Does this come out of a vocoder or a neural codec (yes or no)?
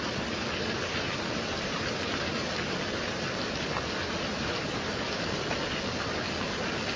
no